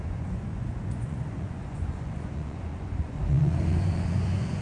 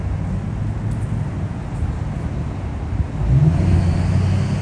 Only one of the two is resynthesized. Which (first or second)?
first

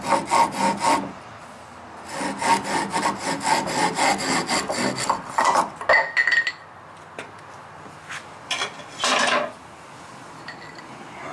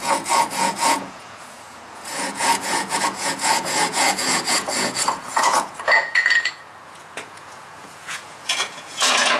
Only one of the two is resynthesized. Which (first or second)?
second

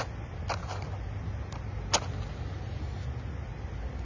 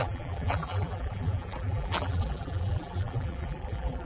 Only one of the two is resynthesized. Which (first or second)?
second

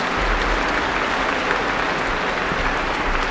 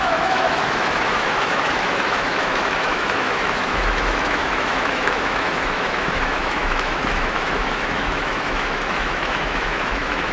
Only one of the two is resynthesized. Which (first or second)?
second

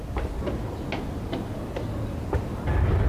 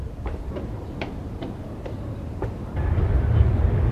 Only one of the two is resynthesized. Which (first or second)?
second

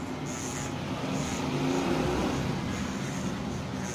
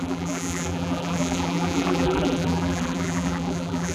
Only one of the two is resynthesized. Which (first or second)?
second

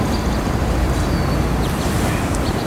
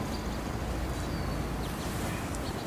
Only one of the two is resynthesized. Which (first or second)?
first